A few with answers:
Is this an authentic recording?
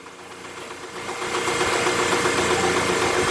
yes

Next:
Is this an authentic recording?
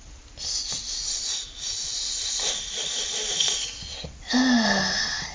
yes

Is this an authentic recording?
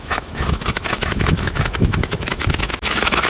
no